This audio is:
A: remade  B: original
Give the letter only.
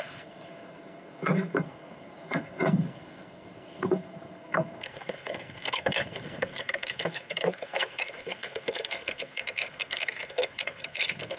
A